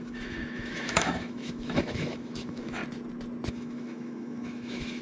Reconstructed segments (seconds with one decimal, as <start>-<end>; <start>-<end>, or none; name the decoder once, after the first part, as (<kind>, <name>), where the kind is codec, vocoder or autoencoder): 0.0-2.8 (autoencoder, DAC-VAE); 3.5-5.0